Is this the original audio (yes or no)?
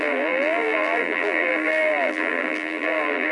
no